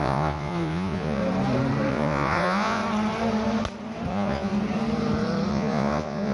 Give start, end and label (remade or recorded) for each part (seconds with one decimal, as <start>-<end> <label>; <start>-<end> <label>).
0.0-1.2 remade; 1.2-1.9 recorded; 1.9-2.8 remade; 2.8-4.1 recorded; 4.1-4.5 remade; 4.5-5.5 recorded; 5.5-6.3 remade